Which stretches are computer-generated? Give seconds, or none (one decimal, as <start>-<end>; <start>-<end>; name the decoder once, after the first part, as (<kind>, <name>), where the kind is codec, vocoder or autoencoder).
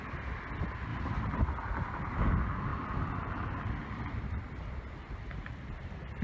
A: none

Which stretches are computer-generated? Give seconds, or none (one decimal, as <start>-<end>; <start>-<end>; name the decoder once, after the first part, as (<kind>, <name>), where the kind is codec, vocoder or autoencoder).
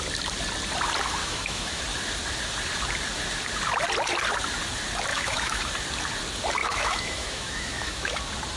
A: 1.2-1.8 (autoencoder, DAC-VAE); 5.1-5.7; 6.6-8.2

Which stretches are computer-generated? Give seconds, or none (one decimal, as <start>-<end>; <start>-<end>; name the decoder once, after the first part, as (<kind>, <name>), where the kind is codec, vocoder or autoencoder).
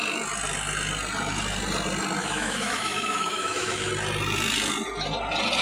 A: 2.2-3.9 (autoencoder, DAC-VAE)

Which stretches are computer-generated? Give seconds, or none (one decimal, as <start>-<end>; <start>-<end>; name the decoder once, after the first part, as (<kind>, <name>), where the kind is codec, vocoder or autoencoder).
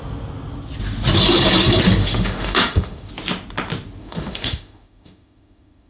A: 2.0-3.1 (autoencoder, DAC-VAE); 4.0-5.9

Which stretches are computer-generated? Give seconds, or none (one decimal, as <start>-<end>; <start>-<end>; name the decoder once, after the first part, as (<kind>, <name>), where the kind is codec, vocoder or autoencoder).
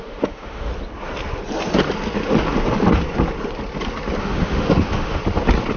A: 0.0-0.7 (autoencoder, DAC-VAE); 4.2-5.2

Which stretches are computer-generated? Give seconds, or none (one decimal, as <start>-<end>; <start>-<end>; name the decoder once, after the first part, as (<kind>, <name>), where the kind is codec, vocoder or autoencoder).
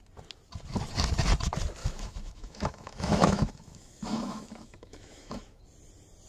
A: 1.8-5.6 (autoencoder, DAC-VAE)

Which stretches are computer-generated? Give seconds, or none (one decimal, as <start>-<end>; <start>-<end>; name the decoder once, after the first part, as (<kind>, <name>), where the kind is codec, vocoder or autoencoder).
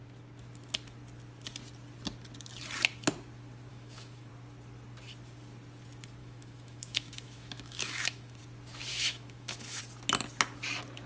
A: 3.7-4.3 (autoencoder, DAC-VAE); 6.2-8.4; 8.9-9.8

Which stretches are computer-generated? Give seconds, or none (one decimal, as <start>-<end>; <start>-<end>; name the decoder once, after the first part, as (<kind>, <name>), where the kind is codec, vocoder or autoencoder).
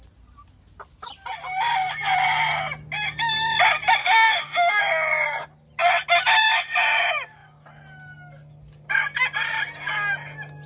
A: 4.0-4.8 (autoencoder, DAC-VAE)